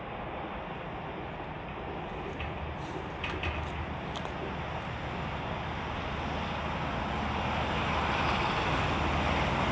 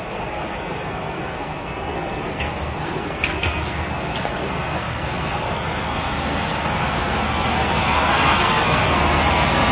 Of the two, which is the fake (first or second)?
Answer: second